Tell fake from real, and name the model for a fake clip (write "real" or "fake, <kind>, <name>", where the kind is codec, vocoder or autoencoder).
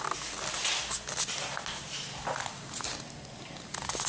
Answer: real